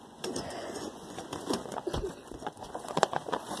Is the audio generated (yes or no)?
yes